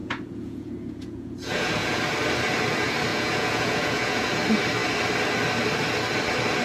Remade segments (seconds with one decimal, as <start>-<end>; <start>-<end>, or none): 0.0-2.0; 3.1-4.3